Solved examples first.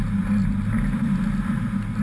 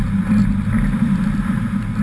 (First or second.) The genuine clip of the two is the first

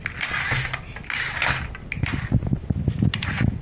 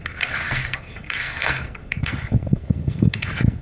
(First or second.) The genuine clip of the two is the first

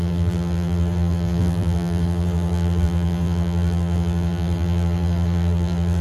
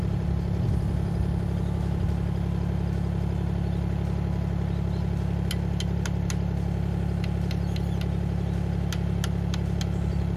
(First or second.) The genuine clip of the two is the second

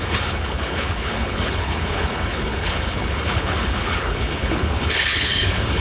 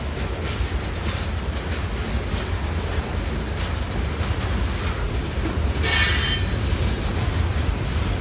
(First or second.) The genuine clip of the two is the second